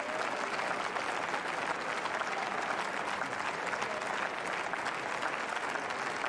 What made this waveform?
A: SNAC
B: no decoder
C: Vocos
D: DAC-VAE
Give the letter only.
B